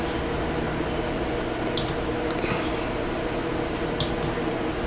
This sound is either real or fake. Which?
real